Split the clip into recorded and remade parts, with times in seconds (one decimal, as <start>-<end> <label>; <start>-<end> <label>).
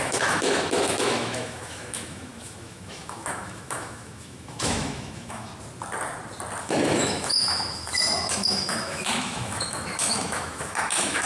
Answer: 0.0-5.5 remade; 5.5-6.6 recorded; 6.6-11.3 remade